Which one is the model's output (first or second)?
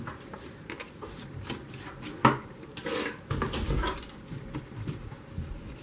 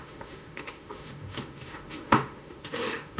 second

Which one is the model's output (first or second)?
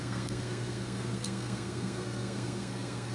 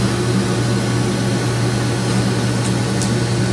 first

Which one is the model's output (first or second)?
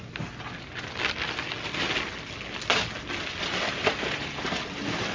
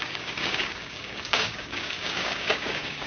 second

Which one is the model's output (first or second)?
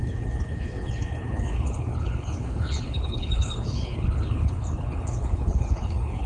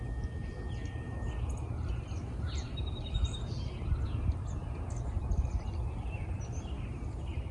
first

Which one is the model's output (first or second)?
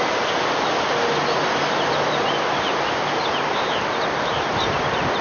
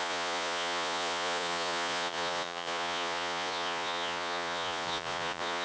second